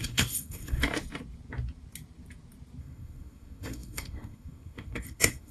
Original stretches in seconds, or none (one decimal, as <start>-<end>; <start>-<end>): 0.8-2.8

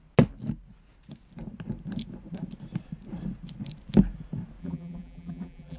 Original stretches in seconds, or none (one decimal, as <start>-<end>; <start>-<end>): 0.0-4.6